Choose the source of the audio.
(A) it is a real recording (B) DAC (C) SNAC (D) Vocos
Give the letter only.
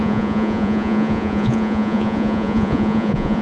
D